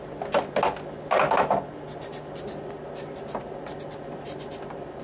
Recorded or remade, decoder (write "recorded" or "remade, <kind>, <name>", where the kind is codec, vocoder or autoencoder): recorded